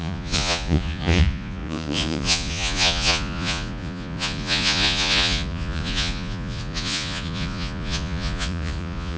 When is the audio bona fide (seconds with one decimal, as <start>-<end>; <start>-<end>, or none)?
none